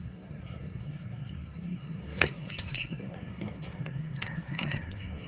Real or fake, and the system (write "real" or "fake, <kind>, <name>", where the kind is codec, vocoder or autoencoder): fake, codec, SNAC